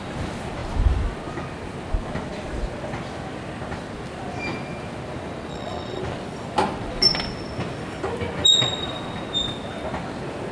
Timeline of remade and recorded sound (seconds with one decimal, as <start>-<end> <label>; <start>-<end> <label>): 0.0-5.5 recorded; 5.5-6.0 remade; 6.0-10.5 recorded